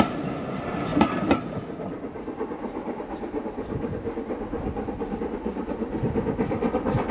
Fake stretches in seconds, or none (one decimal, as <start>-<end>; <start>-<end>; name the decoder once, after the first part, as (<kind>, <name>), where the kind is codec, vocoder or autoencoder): none